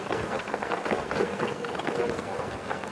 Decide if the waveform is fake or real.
fake